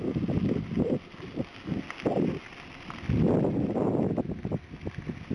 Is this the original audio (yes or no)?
yes